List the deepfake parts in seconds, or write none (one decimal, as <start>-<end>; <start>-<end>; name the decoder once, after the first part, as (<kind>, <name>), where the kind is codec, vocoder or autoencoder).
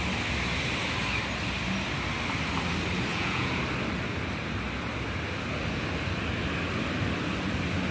3.1-3.6 (vocoder, Vocos)